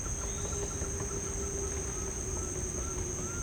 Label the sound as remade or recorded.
recorded